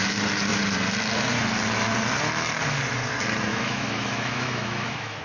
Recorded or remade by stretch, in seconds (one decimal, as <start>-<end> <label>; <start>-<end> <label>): 0.0-3.5 recorded; 3.5-5.2 remade